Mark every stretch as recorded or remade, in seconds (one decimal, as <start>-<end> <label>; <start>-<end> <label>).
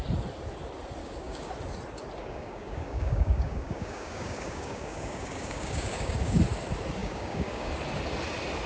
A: 0.0-1.0 recorded; 1.0-1.5 remade; 1.5-2.2 recorded; 2.2-6.4 remade; 6.4-7.0 recorded; 7.0-7.7 remade; 7.7-8.7 recorded